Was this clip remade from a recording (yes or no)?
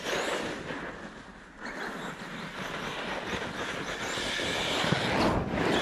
no